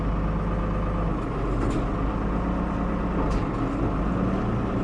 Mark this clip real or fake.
real